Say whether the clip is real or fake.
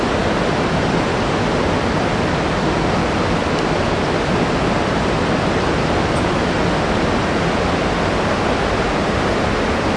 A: real